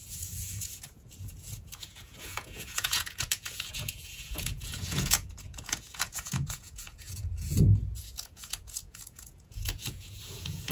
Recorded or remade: remade